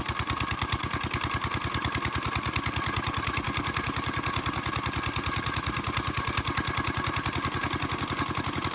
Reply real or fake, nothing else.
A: real